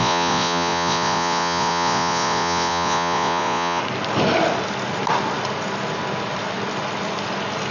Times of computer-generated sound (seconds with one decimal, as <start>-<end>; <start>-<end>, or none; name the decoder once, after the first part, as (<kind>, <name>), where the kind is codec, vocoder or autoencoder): 0.0-3.8 (vocoder, Vocos)